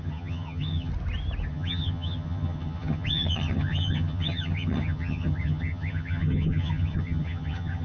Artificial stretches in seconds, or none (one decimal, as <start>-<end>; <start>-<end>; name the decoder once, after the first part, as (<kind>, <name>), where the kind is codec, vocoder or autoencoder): 0.0-0.9 (vocoder, HiFi-GAN); 1.5-7.8